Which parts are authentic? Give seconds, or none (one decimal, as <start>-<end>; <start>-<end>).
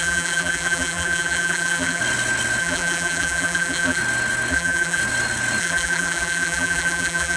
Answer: 2.0-2.6; 4.0-4.5; 5.0-5.6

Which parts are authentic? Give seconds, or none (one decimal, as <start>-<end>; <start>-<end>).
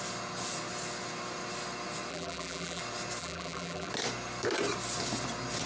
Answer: 0.0-2.1; 2.8-3.2; 3.9-5.7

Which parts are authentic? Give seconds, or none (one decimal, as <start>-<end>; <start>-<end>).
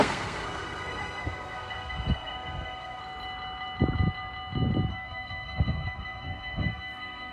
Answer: 3.0-4.9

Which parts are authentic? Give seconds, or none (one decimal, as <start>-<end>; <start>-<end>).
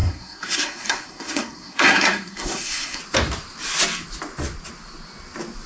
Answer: 3.0-5.7